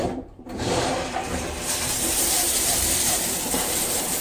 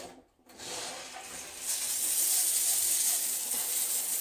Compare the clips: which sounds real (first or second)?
second